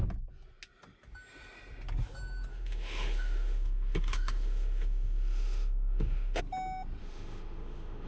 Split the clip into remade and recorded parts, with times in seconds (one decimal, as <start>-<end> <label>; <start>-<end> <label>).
0.0-2.5 recorded; 2.5-6.4 remade; 6.4-7.0 recorded; 7.0-8.1 remade